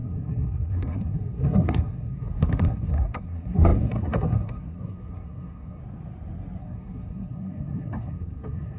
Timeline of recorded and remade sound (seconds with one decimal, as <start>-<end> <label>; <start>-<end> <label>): 0.0-5.8 remade; 5.8-6.6 recorded; 6.6-8.8 remade